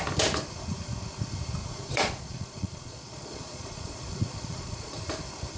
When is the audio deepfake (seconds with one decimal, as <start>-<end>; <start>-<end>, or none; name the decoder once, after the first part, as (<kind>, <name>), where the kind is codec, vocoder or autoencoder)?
1.6-5.0 (vocoder, Vocos)